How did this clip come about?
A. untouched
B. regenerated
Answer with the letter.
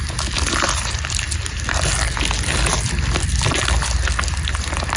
B